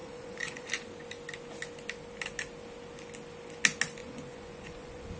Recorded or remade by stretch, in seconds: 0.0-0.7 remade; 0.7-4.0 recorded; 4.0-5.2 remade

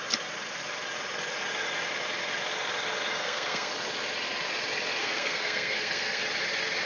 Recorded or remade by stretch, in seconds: 0.0-3.2 recorded; 3.2-3.7 remade; 3.7-5.0 recorded; 5.0-6.2 remade; 6.2-6.9 recorded

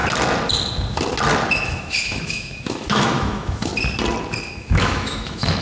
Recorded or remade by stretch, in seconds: 0.0-1.5 recorded; 1.5-3.7 remade; 3.7-4.5 recorded; 4.5-5.6 remade

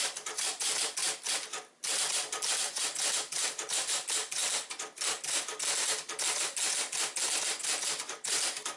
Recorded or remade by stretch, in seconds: 0.0-4.4 remade; 4.4-8.1 recorded; 8.1-8.8 remade